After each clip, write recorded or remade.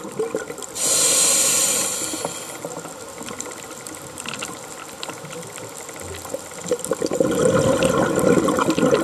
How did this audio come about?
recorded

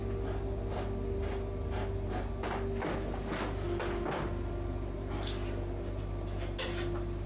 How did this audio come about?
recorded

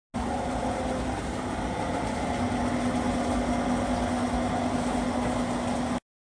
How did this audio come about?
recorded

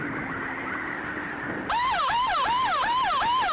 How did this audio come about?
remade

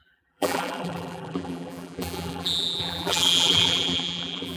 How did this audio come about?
remade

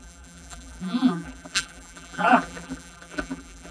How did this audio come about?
remade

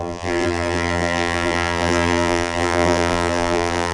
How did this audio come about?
remade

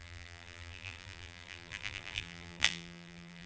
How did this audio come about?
remade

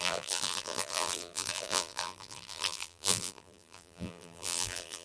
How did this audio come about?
remade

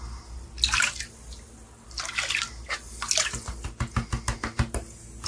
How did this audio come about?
recorded